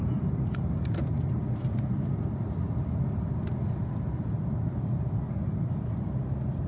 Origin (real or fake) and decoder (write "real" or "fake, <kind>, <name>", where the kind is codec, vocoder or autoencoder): real